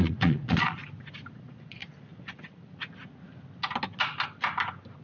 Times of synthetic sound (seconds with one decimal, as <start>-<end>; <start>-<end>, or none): 0.0-0.8; 1.3-1.8